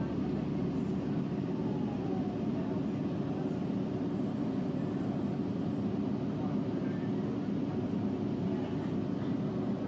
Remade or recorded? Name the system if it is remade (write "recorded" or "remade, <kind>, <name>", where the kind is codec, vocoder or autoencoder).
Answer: recorded